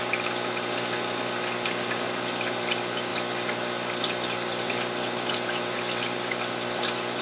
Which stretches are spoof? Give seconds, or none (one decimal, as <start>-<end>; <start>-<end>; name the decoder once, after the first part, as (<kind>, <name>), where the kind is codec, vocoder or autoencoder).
none